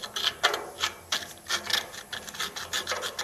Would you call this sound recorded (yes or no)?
yes